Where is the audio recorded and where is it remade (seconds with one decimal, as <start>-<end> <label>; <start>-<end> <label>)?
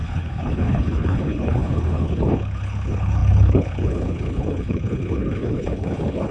0.0-6.3 remade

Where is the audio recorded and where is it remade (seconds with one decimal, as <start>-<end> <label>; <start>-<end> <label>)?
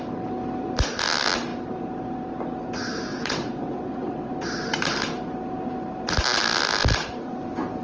0.0-3.1 recorded; 3.1-4.3 remade; 4.3-7.8 recorded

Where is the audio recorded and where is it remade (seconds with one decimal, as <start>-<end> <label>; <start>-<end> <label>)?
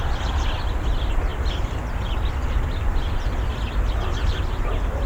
0.0-1.3 remade; 1.3-4.4 recorded; 4.4-5.1 remade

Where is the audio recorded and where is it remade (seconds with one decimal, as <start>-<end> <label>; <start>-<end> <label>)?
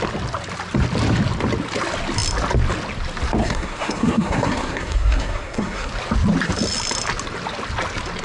0.0-3.4 recorded; 3.4-5.9 remade; 5.9-8.2 recorded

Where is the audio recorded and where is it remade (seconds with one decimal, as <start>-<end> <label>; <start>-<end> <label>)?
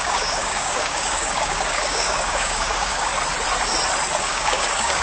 0.0-3.1 remade; 3.1-4.2 recorded; 4.2-5.0 remade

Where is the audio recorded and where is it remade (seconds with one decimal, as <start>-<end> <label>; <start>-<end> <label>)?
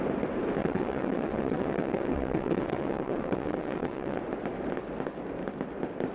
0.0-0.6 recorded; 0.6-4.2 remade; 4.2-6.1 recorded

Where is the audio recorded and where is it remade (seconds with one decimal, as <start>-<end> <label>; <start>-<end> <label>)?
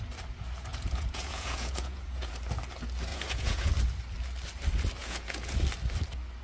0.0-0.7 recorded; 0.7-2.3 remade; 2.3-3.1 recorded; 3.1-3.7 remade; 3.7-5.0 recorded; 5.0-5.6 remade; 5.6-6.4 recorded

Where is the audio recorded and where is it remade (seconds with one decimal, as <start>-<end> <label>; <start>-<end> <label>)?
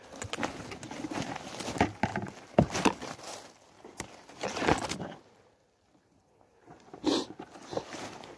0.0-8.4 recorded